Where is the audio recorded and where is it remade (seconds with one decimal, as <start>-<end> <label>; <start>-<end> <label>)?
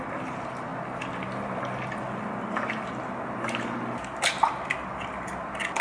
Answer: 0.0-5.8 recorded